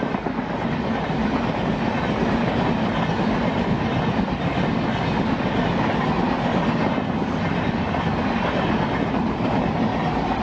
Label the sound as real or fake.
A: real